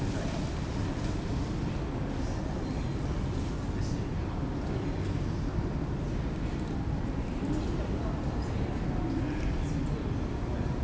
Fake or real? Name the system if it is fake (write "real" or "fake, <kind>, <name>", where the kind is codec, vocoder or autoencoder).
real